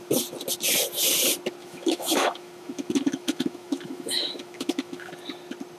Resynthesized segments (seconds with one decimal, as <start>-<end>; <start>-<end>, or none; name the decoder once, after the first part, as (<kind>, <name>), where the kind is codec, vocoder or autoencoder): 1.6-5.1 (autoencoder, DAC-VAE)